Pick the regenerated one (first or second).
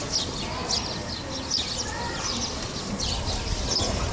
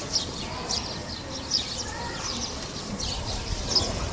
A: second